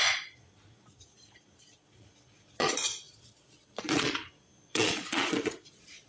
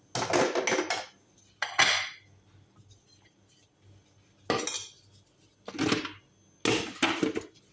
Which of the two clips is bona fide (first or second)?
second